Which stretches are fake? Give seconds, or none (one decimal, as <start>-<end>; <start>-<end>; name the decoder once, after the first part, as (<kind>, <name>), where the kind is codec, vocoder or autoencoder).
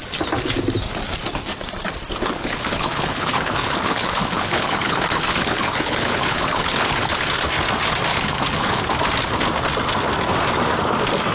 2.4-7.2 (codec, HILCodec); 8.1-8.8